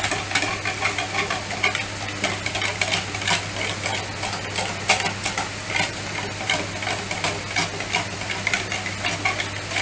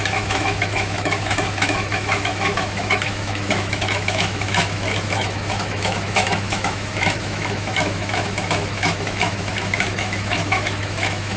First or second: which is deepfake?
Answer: second